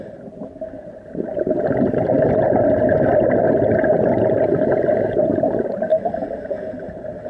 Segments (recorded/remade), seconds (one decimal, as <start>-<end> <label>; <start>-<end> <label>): 0.0-3.1 recorded; 3.1-3.7 remade; 3.7-7.3 recorded